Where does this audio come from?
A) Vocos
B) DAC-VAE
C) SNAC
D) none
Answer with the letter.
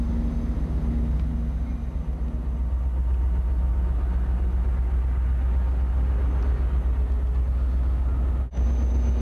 D